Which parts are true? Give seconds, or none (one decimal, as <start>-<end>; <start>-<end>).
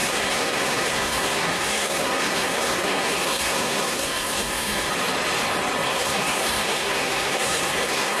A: 4.9-5.9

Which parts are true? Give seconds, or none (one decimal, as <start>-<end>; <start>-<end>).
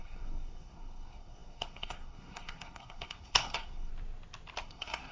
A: 3.9-4.6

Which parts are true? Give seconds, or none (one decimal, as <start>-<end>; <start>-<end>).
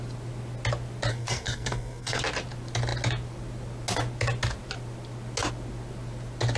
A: 0.0-1.1; 2.2-6.6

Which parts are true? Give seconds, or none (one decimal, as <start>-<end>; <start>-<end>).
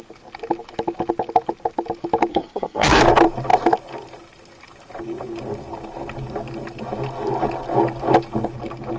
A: 0.0-2.3; 3.0-9.0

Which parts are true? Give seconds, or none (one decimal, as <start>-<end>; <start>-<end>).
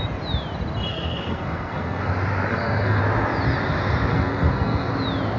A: 0.0-0.9; 2.1-2.5; 3.0-4.1; 4.9-5.4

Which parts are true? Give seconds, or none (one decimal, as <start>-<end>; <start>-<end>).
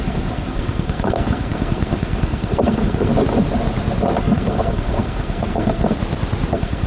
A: 3.1-4.2; 6.0-6.5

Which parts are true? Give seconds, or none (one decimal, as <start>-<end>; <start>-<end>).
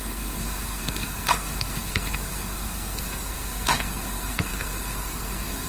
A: none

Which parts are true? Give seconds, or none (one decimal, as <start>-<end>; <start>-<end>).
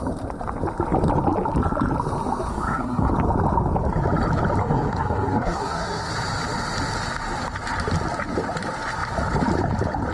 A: 0.0-2.5; 3.1-4.6; 6.1-10.1